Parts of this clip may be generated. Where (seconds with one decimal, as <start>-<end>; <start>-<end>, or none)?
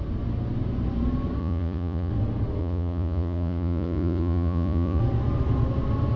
1.4-2.1; 2.6-5.0